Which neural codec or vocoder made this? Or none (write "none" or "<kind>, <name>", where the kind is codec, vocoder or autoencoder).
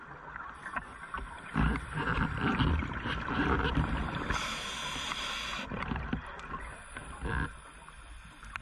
none